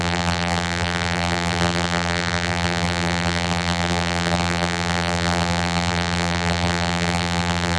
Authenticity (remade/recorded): remade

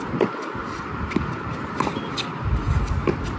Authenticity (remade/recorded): recorded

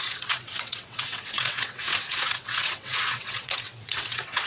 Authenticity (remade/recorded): remade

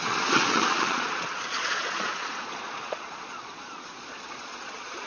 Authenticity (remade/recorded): remade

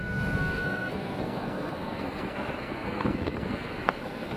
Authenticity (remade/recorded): remade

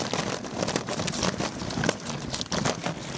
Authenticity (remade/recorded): recorded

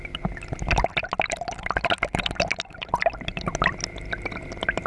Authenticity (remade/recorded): recorded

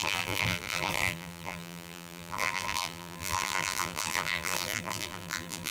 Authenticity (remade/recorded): remade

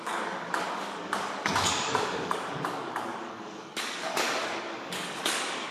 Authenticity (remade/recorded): remade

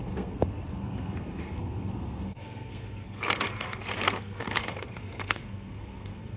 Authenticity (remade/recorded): remade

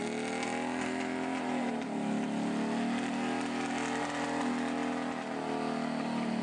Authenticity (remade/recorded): recorded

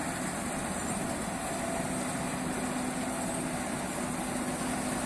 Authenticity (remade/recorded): recorded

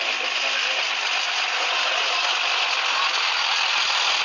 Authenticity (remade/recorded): recorded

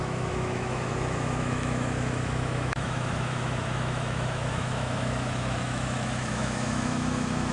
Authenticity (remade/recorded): remade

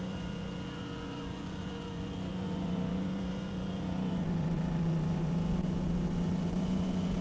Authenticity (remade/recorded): remade